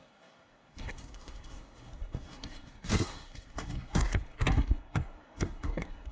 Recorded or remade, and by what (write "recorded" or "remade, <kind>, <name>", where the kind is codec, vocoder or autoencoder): remade, codec, SNAC